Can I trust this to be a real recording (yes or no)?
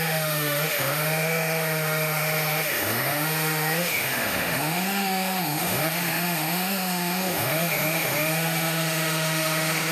no